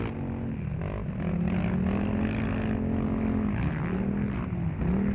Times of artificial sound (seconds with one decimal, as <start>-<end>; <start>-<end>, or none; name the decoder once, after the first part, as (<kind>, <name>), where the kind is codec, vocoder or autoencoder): none

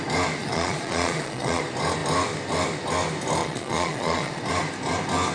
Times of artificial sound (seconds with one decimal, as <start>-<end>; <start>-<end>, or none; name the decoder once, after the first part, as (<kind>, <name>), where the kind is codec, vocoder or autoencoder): 0.4-1.6 (vocoder, Vocos); 3.4-4.4

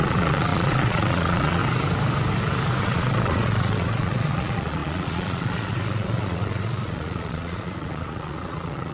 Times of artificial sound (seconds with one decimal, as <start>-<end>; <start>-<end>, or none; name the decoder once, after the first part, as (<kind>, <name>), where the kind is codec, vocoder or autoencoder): 0.0-1.6 (vocoder, Vocos); 2.8-8.9